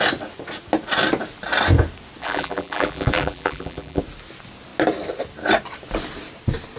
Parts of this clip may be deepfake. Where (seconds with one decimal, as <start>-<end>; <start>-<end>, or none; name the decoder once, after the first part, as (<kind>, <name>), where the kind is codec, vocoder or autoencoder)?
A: 2.2-4.0 (vocoder, BigVGAN v2)